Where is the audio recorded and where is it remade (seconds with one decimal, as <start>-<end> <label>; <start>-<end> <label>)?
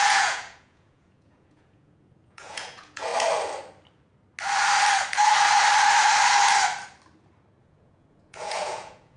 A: 0.0-3.1 remade; 3.1-7.6 recorded; 7.6-9.2 remade